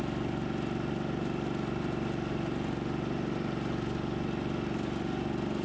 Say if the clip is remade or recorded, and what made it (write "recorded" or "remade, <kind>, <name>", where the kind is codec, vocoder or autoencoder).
recorded